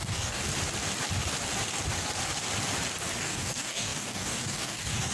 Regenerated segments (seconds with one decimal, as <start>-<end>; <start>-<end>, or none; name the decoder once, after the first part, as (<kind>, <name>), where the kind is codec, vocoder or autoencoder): 0.0-0.4 (codec, DAC); 3.2-5.1